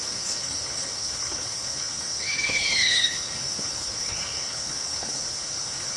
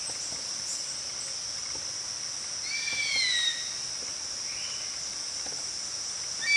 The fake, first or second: first